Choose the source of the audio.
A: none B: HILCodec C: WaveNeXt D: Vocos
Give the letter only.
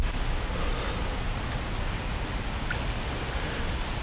A